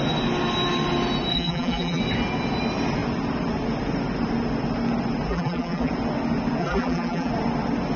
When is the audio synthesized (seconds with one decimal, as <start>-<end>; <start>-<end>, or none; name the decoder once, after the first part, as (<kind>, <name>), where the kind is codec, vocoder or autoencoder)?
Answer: 1.3-2.0 (vocoder, BigVGAN v2); 5.3-5.9; 6.6-7.3